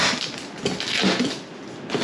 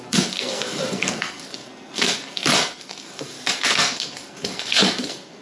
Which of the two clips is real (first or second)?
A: first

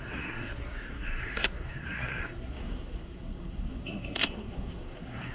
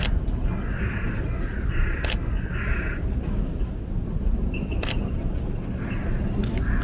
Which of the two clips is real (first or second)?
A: second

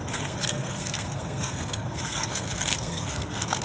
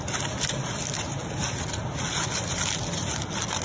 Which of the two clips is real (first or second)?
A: second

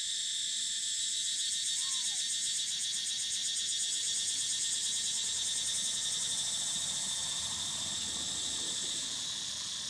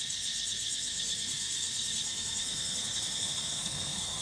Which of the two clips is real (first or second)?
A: first